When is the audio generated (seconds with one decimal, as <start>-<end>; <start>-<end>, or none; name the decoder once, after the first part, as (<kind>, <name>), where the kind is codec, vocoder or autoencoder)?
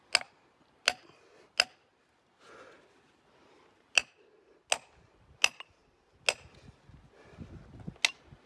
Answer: none